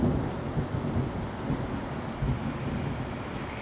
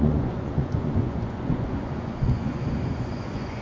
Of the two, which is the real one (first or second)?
first